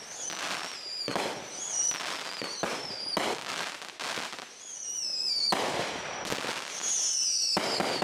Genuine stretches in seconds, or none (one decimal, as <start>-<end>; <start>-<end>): 0.0-8.0